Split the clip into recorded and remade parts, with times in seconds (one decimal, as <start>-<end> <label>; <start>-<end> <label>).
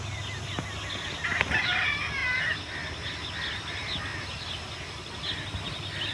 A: 0.0-6.1 recorded